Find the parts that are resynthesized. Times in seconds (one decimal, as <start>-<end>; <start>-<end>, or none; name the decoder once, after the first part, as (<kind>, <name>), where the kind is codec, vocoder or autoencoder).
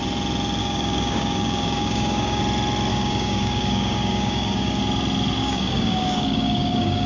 0.6-2.4 (codec, DAC); 2.9-4.8; 5.4-7.1